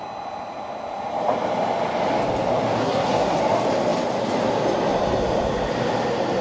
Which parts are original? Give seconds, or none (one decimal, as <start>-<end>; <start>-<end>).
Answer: 0.0-2.8; 3.4-6.4